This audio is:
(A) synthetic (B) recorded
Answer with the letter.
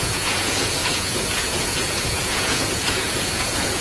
A